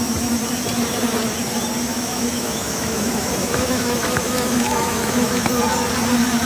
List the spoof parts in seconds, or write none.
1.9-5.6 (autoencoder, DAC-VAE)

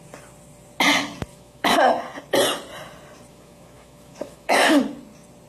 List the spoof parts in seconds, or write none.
1.3-1.9 (autoencoder, DAC-VAE); 3.3-4.8